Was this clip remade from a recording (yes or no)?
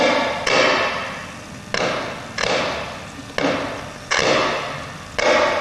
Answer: no